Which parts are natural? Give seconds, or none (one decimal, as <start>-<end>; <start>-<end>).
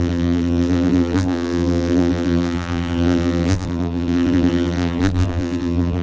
none